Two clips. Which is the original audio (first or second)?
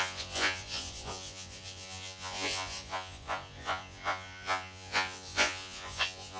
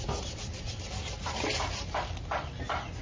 second